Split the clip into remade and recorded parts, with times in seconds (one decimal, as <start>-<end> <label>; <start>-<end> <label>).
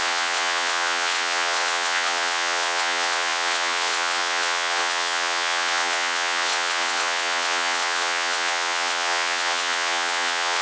0.0-10.6 remade